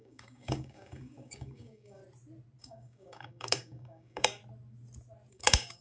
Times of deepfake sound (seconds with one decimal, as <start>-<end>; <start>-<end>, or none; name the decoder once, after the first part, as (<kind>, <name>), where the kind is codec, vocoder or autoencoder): 0.0-2.0 (codec, DAC); 2.6-4.4; 5.3-5.8